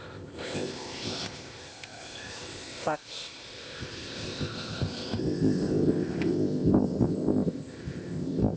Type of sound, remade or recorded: remade